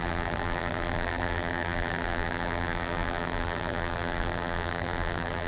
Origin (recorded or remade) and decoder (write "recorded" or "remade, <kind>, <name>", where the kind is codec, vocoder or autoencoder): remade, vocoder, BigVGAN v2